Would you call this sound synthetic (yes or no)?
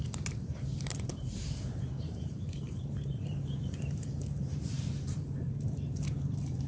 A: yes